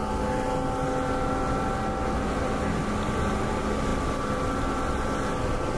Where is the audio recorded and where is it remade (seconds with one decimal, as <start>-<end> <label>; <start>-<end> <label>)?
0.0-5.8 recorded